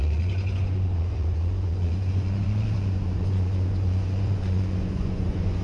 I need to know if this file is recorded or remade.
remade